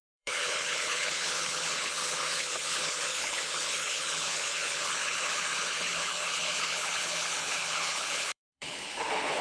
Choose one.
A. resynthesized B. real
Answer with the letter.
A